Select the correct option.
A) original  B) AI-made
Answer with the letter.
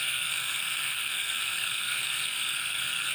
B